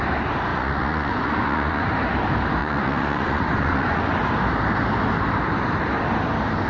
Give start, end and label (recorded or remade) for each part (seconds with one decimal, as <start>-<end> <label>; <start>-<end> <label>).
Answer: 0.0-0.5 recorded; 0.5-1.8 remade; 1.8-2.6 recorded; 2.6-4.1 remade; 4.1-6.7 recorded